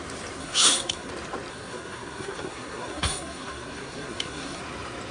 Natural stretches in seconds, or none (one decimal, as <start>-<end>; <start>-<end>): 0.0-0.4; 1.1-1.5; 4.6-5.1